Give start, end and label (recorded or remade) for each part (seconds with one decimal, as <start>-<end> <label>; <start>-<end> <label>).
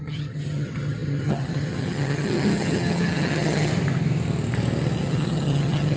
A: 0.0-3.7 remade; 3.7-5.0 recorded; 5.0-6.0 remade